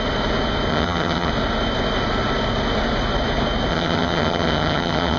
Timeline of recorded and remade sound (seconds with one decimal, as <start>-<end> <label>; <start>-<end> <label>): 0.0-0.7 recorded; 0.7-1.3 remade; 1.3-3.7 recorded; 3.7-5.2 remade